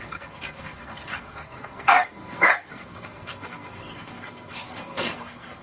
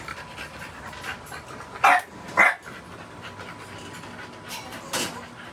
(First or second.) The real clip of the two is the second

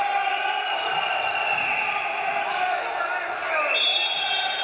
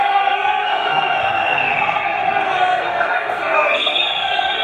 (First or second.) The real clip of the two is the first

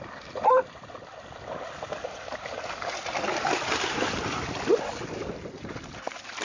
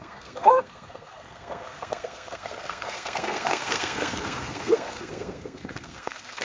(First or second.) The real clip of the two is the first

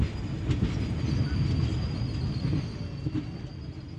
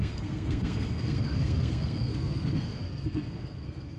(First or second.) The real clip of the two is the first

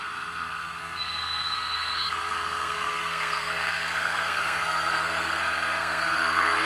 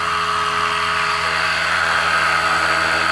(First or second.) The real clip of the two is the second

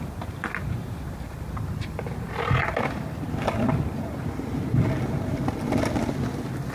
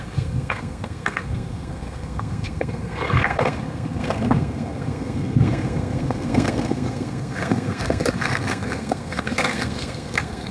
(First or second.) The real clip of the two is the first